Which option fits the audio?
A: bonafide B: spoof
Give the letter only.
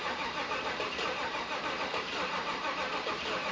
B